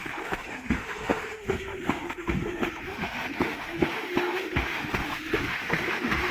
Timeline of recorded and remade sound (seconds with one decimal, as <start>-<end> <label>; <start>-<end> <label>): 0.0-6.3 remade

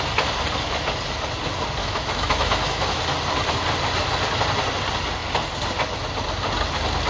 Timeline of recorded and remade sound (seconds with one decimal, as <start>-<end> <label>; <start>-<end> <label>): 0.0-1.8 recorded; 1.8-3.0 remade; 3.0-7.1 recorded